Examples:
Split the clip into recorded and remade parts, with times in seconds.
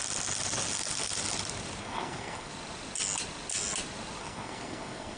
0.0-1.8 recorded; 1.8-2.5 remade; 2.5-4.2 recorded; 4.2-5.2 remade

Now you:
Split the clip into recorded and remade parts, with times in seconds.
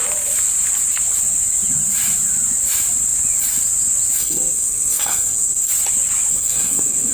0.0-4.2 recorded; 4.2-5.7 remade; 5.7-6.3 recorded; 6.3-7.1 remade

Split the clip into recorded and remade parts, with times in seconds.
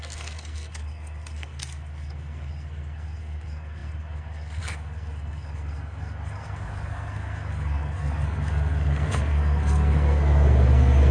0.0-11.1 remade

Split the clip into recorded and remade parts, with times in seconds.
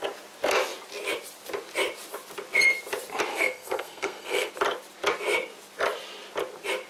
0.0-3.3 recorded; 3.3-4.5 remade; 4.5-6.9 recorded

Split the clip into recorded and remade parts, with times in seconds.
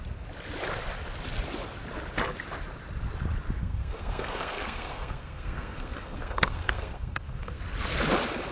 0.0-3.6 recorded; 3.6-7.6 remade; 7.6-8.5 recorded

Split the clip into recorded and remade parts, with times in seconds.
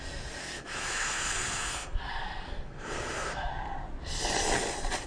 0.0-0.4 recorded; 0.4-3.5 remade; 3.5-5.1 recorded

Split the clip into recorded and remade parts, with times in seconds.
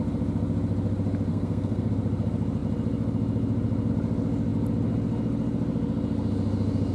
0.0-1.3 recorded; 1.3-1.9 remade; 1.9-6.9 recorded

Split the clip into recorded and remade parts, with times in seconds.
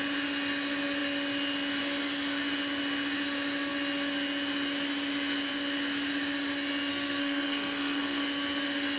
0.0-6.9 recorded; 6.9-8.2 remade; 8.2-9.0 recorded